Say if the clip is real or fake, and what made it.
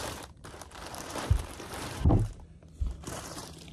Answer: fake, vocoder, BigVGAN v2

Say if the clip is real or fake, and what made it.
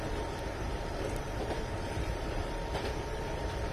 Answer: fake, vocoder, BigVGAN v2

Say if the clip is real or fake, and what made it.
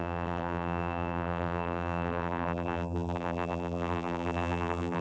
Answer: fake, vocoder, BigVGAN v2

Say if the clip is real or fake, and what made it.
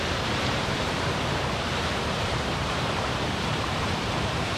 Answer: fake, vocoder, BigVGAN v2